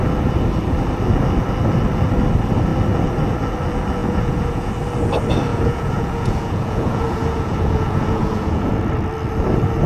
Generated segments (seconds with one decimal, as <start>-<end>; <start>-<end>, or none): 4.0-4.7; 5.5-8.7